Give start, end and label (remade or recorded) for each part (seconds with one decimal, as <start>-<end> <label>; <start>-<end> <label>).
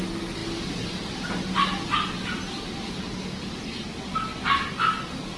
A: 0.0-5.4 recorded